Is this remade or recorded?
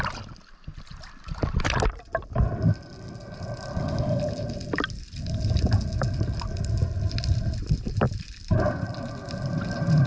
recorded